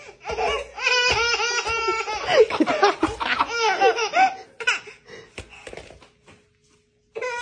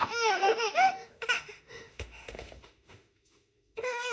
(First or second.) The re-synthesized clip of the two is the second